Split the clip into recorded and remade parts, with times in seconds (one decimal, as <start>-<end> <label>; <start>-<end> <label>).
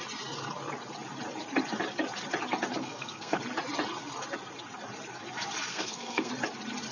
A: 0.0-2.8 recorded; 2.8-3.4 remade; 3.4-5.7 recorded; 5.7-6.3 remade; 6.3-6.9 recorded